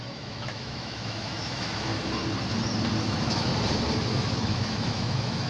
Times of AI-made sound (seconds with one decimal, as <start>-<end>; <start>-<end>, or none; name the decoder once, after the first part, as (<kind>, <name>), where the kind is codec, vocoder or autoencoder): 0.0-1.9 (autoencoder, DAC-VAE); 3.0-3.5; 4.1-5.5